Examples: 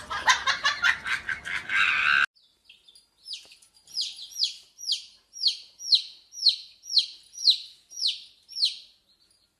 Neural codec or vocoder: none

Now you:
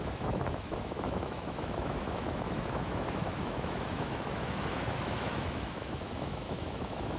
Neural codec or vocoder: autoencoder, DAC-VAE